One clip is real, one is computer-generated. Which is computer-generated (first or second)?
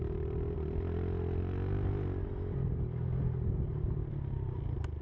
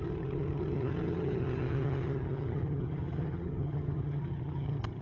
second